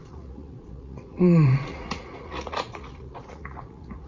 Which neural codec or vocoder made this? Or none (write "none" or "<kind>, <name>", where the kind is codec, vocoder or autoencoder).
vocoder, Vocos